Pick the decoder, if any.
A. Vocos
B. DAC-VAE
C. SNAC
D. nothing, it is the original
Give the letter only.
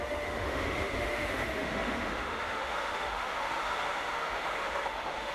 B